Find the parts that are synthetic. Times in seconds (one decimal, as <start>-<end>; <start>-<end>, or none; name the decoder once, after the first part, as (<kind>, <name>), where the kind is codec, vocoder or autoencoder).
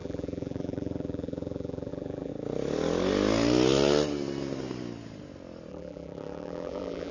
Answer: 0.0-2.3 (vocoder, BigVGAN v2); 5.7-7.1